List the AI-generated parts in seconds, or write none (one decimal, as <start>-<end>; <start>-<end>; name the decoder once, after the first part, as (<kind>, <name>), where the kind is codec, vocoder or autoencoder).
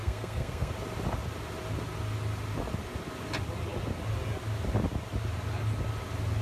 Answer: 0.0-0.7 (codec, SNAC)